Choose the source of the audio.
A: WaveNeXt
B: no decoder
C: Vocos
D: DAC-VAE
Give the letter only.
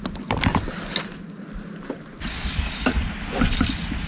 B